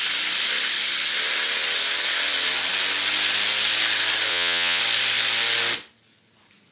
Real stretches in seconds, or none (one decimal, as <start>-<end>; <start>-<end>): 0.0-4.3; 4.8-6.7